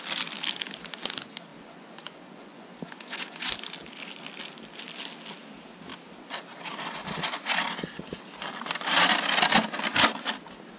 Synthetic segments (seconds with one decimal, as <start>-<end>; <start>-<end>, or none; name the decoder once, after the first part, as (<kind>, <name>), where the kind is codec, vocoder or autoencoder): 1.5-3.5 (vocoder, Vocos)